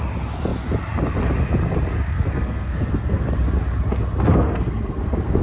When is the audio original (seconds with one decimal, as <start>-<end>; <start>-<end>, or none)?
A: 0.0-2.1; 3.2-4.3